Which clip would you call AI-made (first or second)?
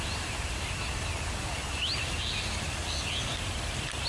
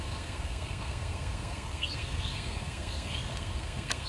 second